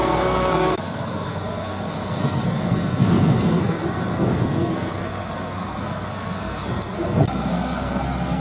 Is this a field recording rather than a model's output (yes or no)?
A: no